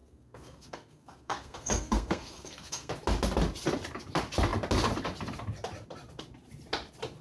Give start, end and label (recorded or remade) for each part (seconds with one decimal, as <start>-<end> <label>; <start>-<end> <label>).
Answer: 0.0-2.9 remade; 2.9-7.2 recorded